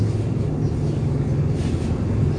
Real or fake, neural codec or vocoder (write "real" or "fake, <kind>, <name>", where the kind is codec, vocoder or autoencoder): real